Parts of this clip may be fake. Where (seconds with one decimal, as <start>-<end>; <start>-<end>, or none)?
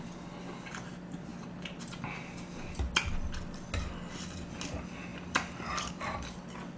none